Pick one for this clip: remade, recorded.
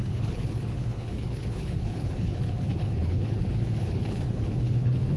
remade